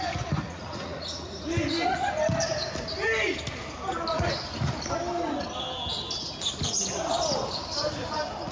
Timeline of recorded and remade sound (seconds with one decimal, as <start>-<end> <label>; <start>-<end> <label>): 0.0-0.4 recorded; 0.4-1.3 remade; 1.3-8.5 recorded

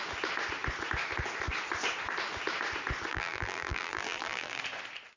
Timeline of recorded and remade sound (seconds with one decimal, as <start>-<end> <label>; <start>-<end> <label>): 0.0-3.1 recorded; 3.1-4.6 remade; 4.6-5.2 recorded

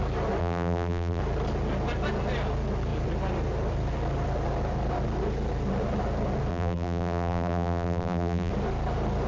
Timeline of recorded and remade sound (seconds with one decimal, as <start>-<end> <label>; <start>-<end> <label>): 0.0-0.4 recorded; 0.4-1.2 remade; 1.2-6.5 recorded; 6.5-8.5 remade; 8.5-9.3 recorded

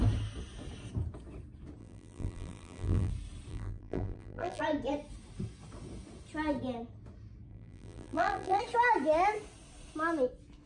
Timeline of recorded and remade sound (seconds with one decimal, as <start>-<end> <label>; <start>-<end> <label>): 0.0-1.8 recorded; 1.8-3.1 remade; 3.1-3.5 recorded; 3.5-4.6 remade; 4.6-7.5 recorded; 7.5-8.6 remade; 8.6-10.7 recorded

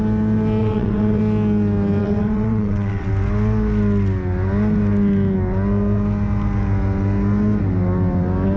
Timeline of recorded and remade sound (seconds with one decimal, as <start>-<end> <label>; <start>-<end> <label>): 0.0-0.6 recorded; 0.6-1.2 remade; 1.2-2.0 recorded; 2.0-3.1 remade; 3.1-8.6 recorded

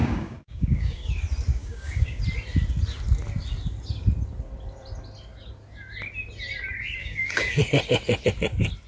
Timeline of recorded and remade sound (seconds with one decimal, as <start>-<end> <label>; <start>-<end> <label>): 0.0-1.1 remade; 1.1-1.6 recorded; 1.6-2.2 remade; 2.2-7.0 recorded; 7.0-7.6 remade; 7.6-8.9 recorded